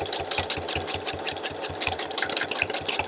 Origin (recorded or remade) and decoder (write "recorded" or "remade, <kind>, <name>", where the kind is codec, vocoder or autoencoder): remade, vocoder, BigVGAN v2